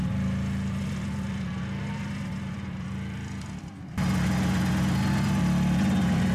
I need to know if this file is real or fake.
real